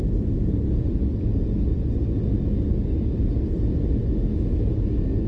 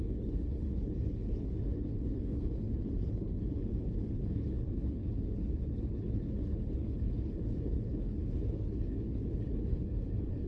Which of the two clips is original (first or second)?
first